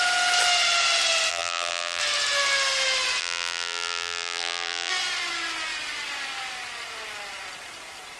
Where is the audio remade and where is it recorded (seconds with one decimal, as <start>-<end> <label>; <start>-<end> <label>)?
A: 0.0-1.3 recorded; 1.3-2.0 remade; 2.0-3.2 recorded; 3.2-4.9 remade; 4.9-8.2 recorded